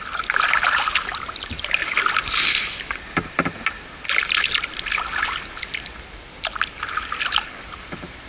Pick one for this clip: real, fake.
real